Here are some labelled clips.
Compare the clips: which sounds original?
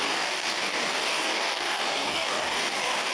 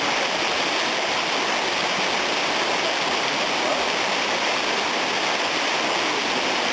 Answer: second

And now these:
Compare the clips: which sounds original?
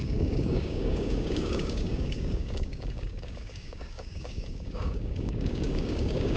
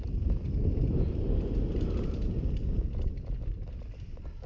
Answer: second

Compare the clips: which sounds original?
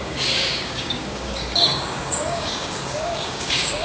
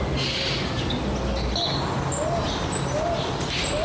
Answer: second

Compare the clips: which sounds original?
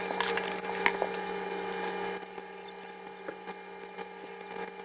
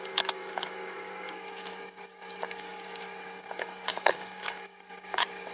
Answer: first